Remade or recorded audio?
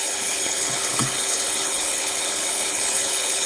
remade